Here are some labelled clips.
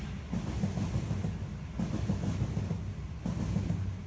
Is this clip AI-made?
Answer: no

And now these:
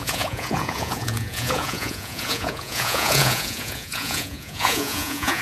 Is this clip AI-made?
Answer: yes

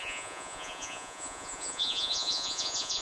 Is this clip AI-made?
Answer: yes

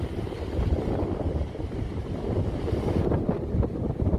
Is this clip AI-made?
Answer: no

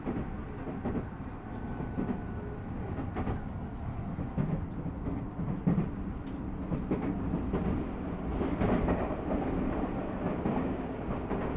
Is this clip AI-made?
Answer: no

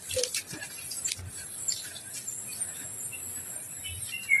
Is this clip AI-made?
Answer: no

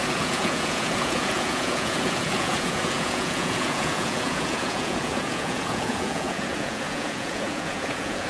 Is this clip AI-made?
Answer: yes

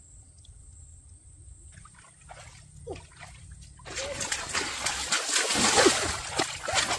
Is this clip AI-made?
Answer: no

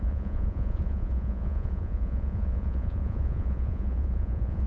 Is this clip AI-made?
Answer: yes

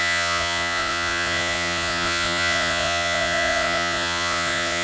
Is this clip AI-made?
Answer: yes